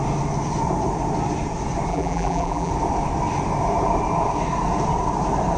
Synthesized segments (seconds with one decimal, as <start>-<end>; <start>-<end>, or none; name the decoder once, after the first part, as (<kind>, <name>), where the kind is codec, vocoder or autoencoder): 1.9-2.7 (vocoder, BigVGAN v2)